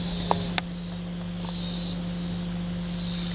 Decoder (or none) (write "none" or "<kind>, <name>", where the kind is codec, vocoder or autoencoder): none